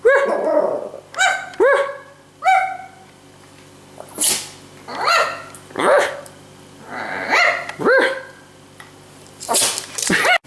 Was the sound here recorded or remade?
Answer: recorded